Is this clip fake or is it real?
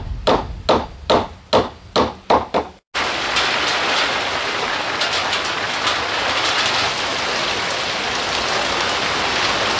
real